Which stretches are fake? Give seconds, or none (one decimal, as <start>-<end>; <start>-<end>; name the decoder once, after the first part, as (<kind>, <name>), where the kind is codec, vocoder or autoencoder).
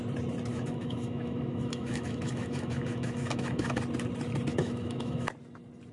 0.5-3.8 (autoencoder, DAC-VAE); 4.5-5.3